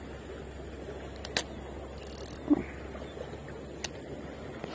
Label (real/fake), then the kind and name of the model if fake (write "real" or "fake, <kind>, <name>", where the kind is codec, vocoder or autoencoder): real